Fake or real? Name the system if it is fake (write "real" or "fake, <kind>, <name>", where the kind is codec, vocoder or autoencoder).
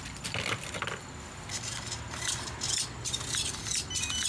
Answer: real